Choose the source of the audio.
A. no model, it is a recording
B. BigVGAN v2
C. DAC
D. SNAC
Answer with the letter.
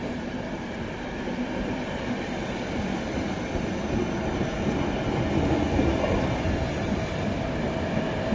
B